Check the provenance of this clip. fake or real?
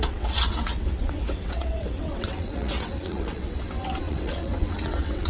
fake